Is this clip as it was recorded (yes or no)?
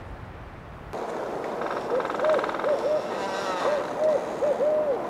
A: yes